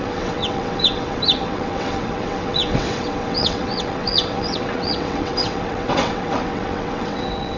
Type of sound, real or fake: fake